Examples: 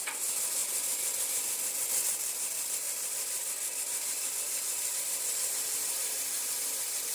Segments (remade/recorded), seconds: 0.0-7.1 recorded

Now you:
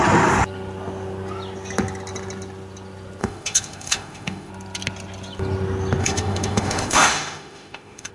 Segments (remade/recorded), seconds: 0.0-3.2 recorded; 3.2-4.5 remade; 4.5-6.0 recorded; 6.0-8.1 remade

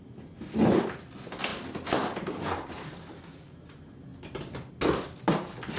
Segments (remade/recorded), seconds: 0.0-5.8 recorded